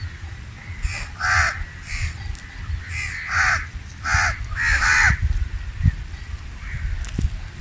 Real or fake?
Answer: real